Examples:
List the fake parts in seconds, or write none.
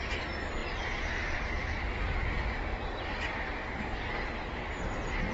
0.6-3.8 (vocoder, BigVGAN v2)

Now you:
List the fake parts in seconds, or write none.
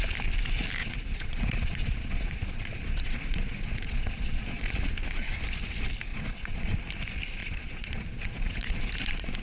0.8-4.9 (vocoder, Vocos); 6.1-6.8; 7.4-8.8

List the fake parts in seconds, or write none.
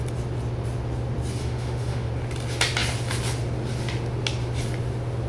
1.4-2.1 (autoencoder, DAC-VAE)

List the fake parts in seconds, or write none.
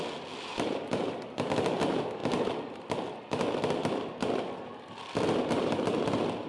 none